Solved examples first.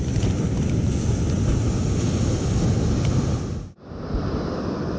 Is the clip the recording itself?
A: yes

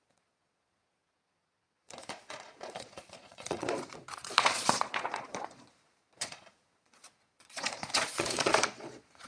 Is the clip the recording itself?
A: no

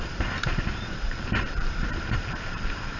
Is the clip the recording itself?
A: no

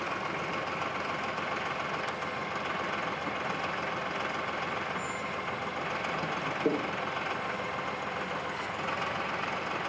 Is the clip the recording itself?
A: yes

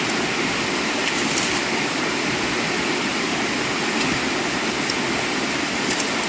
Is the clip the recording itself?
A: yes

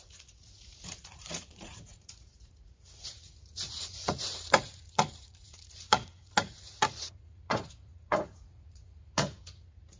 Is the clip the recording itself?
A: no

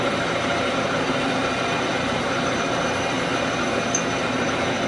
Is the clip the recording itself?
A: no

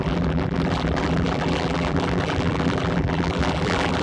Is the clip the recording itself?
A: no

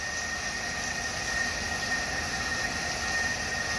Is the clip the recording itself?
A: yes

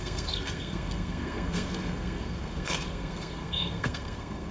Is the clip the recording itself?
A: no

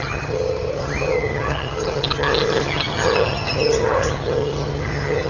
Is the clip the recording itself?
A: no